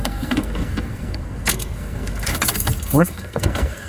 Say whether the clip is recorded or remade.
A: remade